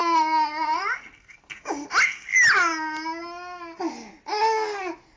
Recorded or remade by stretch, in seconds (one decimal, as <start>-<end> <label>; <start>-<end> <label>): 0.0-5.2 recorded